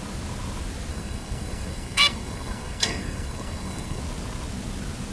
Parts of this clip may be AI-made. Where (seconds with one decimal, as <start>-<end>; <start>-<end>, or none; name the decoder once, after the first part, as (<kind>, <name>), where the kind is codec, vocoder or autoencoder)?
0.9-4.0 (codec, SNAC)